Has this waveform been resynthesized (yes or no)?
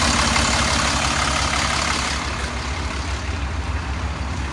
no